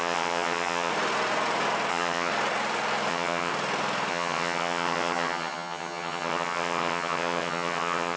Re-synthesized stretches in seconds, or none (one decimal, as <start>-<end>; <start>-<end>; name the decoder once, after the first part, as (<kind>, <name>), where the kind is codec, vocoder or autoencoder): 0.0-0.9 (vocoder, HiFi-GAN); 1.9-2.3; 3.1-3.5; 4.1-8.2